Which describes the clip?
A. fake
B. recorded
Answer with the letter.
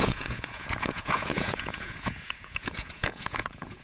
A